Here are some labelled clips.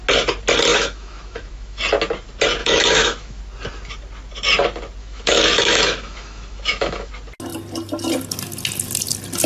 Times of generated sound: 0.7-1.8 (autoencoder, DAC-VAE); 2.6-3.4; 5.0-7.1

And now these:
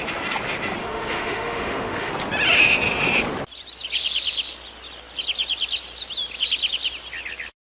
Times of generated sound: 0.8-2.1 (autoencoder, DAC-VAE)

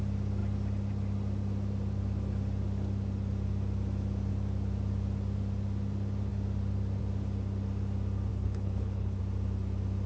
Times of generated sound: 8.3-9.2 (codec, HILCodec)

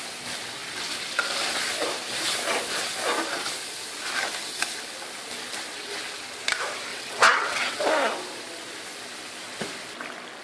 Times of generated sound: 6.9-7.8 (vocoder, WaveNeXt)

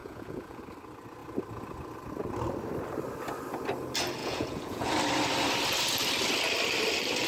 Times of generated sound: 0.0-0.6 (vocoder, Vocos); 4.2-4.9

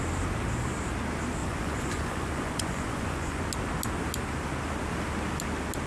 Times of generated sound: 1.4-3.4 (vocoder, Vocos)

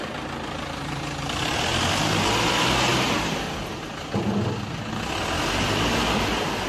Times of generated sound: none

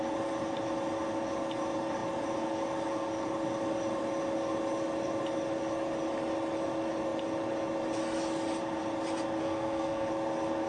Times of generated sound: 9.4-10.1 (codec, SNAC)